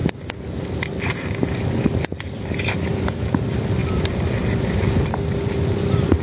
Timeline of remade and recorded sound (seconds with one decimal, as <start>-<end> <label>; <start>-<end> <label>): 0.0-2.9 recorded; 2.9-3.4 remade; 3.4-3.8 recorded; 3.8-5.1 remade; 5.1-6.2 recorded